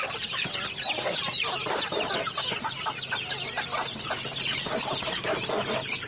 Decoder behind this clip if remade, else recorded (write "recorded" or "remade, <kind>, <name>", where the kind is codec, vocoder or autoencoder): recorded